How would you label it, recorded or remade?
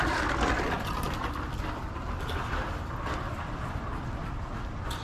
remade